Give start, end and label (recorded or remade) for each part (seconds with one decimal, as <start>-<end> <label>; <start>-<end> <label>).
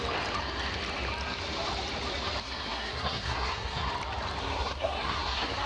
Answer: 0.0-2.4 recorded; 2.4-3.9 remade; 3.9-4.4 recorded; 4.4-5.7 remade